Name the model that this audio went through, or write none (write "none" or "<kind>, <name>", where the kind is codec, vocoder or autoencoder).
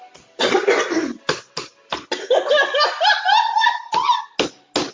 none